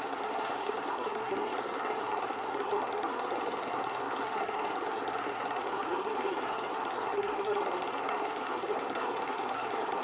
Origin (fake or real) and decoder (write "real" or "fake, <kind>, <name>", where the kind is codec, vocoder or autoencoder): fake, codec, SNAC